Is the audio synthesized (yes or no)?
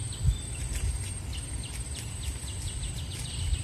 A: no